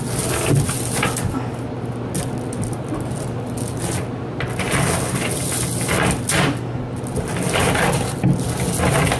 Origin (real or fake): real